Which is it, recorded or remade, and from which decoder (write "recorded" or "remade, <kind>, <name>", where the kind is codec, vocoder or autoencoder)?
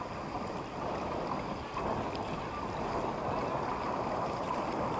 recorded